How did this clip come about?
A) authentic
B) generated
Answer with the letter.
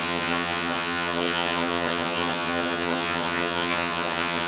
B